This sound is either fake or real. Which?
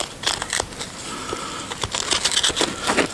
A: real